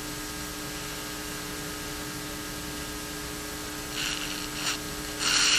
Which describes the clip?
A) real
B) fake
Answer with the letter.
A